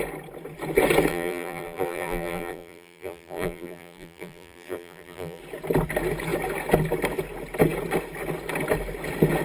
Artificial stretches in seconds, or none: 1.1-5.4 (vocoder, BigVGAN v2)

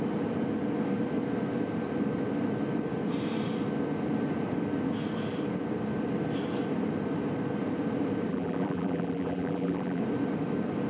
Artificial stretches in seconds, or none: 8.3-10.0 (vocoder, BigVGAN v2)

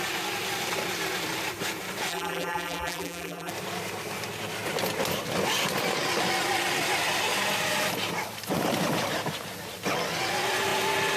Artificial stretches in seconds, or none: 2.1-3.5 (vocoder, BigVGAN v2)

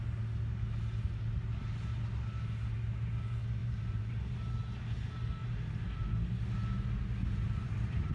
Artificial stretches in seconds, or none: 3.6-4.2 (vocoder, BigVGAN v2); 5.4-6.1; 7.2-8.1

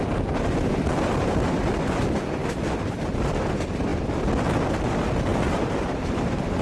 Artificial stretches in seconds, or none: 5.3-6.6 (vocoder, BigVGAN v2)

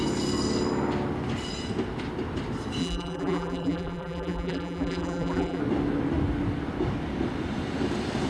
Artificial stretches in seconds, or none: 2.8-5.6 (vocoder, BigVGAN v2)